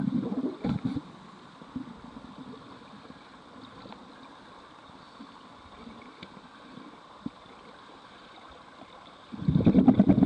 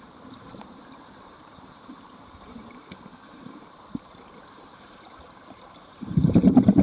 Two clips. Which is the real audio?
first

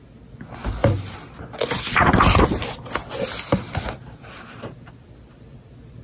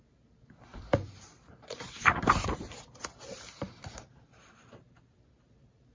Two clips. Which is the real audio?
first